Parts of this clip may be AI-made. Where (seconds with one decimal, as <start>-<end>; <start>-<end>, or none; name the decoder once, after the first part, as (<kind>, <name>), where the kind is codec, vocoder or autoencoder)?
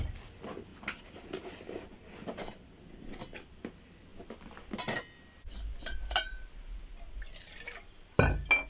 none